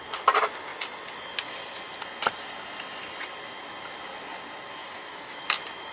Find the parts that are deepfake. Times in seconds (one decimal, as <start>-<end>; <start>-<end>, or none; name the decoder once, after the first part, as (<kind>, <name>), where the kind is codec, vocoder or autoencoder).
4.8-5.4 (autoencoder, DAC-VAE)